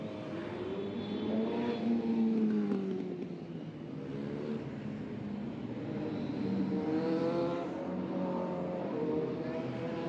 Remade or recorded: recorded